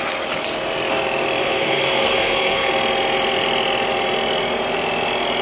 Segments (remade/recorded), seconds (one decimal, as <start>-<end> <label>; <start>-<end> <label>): 0.0-1.4 recorded; 1.4-2.7 remade; 2.7-5.4 recorded